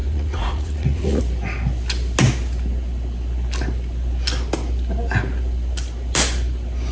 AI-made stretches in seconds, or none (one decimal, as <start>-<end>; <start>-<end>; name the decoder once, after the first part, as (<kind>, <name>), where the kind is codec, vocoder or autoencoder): 0.0-1.2 (vocoder, Vocos)